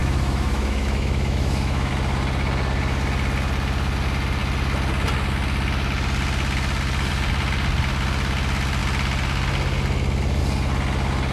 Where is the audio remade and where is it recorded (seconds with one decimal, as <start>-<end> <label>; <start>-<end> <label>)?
0.0-1.9 remade; 1.9-11.3 recorded